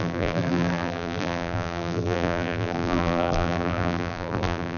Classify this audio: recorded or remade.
remade